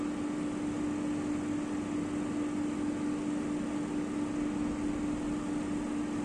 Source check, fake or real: real